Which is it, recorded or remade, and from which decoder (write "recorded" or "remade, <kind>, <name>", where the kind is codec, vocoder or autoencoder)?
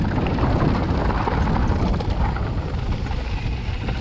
recorded